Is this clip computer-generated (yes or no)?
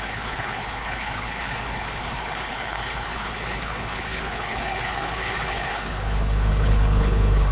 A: yes